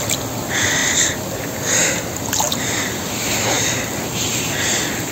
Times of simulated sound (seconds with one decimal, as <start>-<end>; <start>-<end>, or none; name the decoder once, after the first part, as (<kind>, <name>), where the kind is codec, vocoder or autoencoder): none